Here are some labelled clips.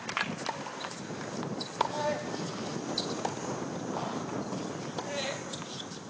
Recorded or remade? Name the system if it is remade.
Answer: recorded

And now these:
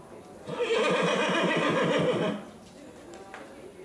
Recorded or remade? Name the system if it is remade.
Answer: recorded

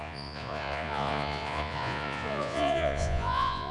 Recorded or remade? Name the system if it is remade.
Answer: remade, vocoder, Vocos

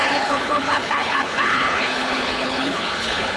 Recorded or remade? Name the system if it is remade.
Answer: remade, codec, HILCodec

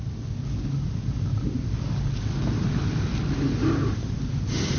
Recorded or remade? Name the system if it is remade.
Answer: recorded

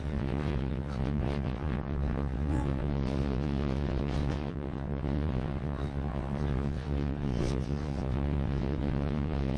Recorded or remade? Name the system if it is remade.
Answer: remade, vocoder, WaveNeXt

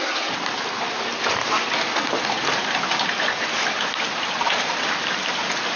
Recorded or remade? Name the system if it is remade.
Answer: recorded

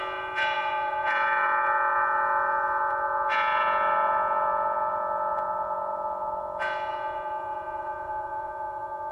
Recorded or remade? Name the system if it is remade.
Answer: remade, vocoder, Vocos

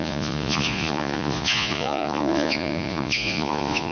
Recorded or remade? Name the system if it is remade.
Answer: remade, vocoder, Vocos